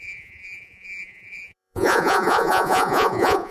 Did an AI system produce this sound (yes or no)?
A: yes